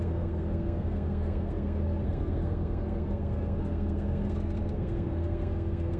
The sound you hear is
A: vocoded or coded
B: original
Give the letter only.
A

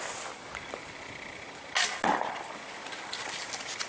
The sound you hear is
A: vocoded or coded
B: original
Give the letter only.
B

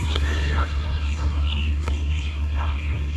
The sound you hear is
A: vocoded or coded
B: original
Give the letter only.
A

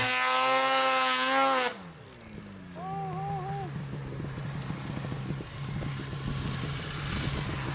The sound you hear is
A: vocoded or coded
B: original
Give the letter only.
B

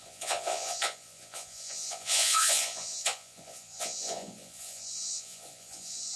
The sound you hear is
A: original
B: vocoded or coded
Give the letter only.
B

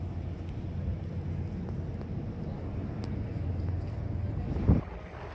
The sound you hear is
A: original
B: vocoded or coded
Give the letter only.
A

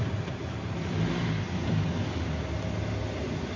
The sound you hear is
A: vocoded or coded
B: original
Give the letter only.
B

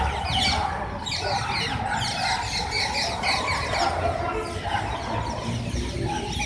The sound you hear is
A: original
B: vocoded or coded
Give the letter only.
A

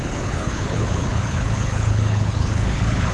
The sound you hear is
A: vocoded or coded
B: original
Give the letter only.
A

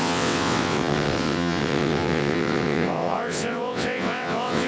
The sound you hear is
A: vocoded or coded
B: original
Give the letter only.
A